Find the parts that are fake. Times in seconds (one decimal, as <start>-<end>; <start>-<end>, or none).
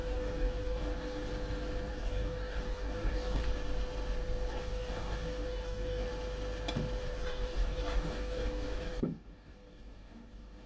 0.0-1.3; 1.9-3.4; 4.5-6.1; 7.0-10.7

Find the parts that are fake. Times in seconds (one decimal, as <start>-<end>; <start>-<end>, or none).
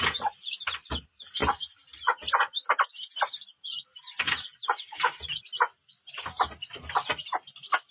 none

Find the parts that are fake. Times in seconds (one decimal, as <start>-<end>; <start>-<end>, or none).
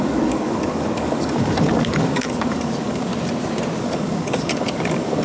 0.0-3.1; 3.8-5.2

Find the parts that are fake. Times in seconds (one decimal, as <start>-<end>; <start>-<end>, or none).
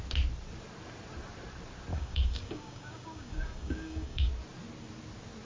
1.9-4.3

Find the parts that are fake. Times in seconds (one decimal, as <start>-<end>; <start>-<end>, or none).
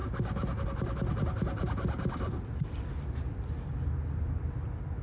none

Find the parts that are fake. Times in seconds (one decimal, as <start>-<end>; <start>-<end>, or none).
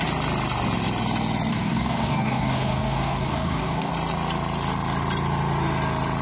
1.5-3.9